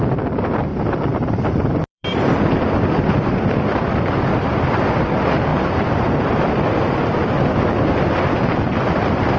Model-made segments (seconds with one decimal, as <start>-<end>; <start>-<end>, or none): 0.7-4.9